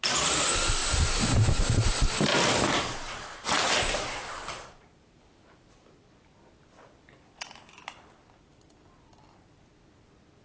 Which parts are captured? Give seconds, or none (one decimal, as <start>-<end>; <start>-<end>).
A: 0.0-0.8; 1.3-2.3; 5.6-10.4